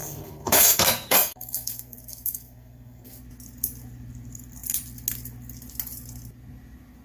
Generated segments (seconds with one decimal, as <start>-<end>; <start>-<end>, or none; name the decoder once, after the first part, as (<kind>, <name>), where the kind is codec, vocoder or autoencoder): 0.0-3.2 (codec, SNAC)